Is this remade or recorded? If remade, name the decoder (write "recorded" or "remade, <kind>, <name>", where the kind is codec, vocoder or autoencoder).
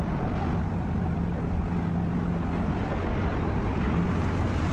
recorded